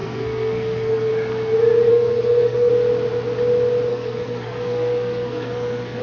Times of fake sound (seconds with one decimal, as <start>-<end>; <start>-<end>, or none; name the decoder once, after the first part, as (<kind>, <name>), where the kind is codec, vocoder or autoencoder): 0.0-1.1 (codec, SNAC); 1.9-2.7; 3.9-6.0

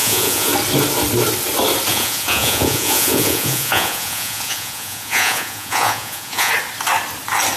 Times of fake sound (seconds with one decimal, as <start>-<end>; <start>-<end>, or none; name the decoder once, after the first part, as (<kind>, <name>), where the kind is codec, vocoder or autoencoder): 0.0-0.5 (vocoder, Vocos); 1.9-6.5

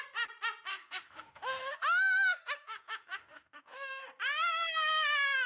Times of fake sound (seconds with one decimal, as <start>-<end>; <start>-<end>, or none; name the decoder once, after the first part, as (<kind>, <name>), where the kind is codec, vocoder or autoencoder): 0.7-4.0 (autoencoder, DAC-VAE)